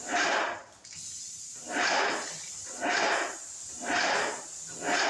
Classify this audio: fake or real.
real